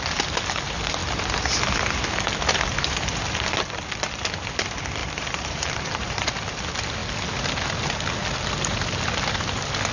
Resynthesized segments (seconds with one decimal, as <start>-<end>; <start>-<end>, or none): 5.0-6.3